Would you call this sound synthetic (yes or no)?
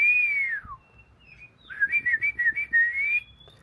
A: no